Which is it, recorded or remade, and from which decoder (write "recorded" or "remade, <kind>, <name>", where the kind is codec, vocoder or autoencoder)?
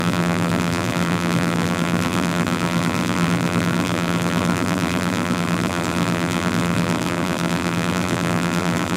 remade, vocoder, BigVGAN v2